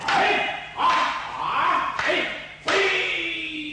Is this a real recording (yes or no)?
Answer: yes